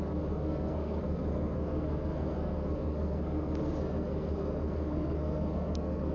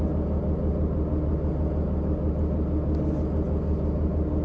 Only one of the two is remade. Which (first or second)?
first